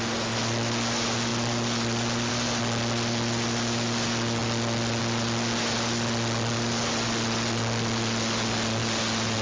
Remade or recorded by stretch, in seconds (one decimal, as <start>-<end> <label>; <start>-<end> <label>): 0.0-9.4 recorded